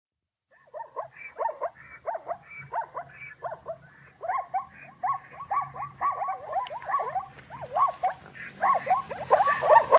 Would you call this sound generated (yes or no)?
no